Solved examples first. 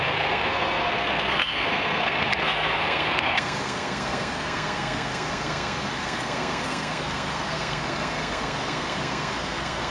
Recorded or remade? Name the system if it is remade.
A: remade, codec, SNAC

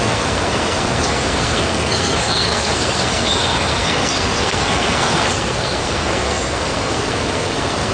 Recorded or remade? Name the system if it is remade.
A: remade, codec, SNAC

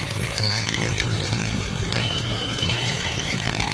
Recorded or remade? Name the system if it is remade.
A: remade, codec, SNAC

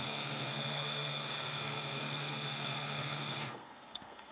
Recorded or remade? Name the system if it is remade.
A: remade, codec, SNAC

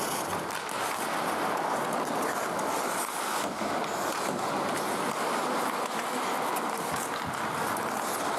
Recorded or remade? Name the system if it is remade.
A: recorded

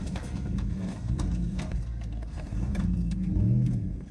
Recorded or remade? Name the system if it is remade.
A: remade, codec, SNAC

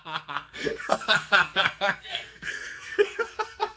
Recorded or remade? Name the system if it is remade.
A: remade, codec, SNAC